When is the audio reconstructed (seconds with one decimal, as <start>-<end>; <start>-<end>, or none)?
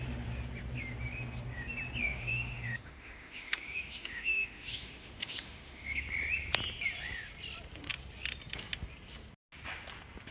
2.0-6.0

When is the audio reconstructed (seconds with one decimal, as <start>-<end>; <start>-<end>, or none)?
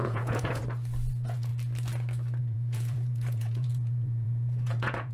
0.0-0.6; 1.1-1.5; 2.4-5.1